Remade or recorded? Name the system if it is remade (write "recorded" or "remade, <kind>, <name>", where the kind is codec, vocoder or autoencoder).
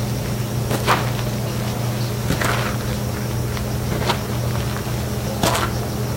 recorded